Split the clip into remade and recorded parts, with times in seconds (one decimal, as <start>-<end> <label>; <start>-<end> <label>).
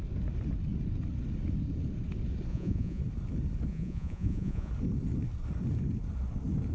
0.0-2.5 recorded; 2.5-3.0 remade; 3.0-3.7 recorded; 3.7-4.7 remade; 4.7-6.7 recorded